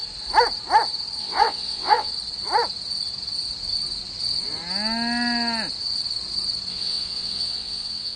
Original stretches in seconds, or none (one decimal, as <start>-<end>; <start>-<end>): 0.0-1.2; 2.1-6.7